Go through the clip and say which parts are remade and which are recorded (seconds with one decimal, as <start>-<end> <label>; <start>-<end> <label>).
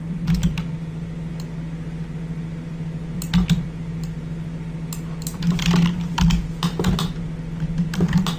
0.0-0.4 recorded; 0.4-1.3 remade; 1.3-8.4 recorded